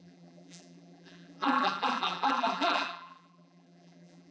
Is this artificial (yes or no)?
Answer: yes